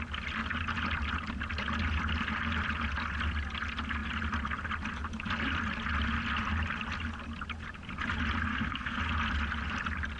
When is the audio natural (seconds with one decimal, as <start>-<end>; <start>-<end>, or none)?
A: 0.0-8.5; 9.0-10.2